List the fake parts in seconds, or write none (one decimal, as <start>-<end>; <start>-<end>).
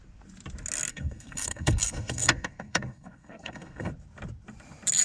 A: 0.9-3.9